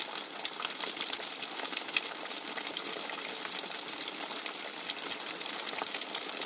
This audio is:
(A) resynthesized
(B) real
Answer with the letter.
B